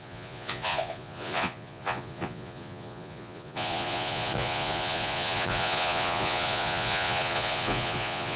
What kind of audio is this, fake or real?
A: fake